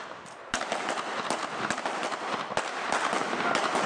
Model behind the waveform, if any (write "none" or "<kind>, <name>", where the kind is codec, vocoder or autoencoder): none